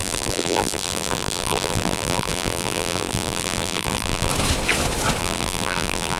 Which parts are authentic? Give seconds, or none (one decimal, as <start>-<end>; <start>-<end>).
4.3-5.2